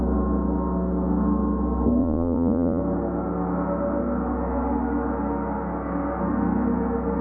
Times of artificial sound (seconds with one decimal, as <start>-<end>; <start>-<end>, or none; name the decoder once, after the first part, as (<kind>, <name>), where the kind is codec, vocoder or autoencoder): 2.0-2.8 (vocoder, Vocos)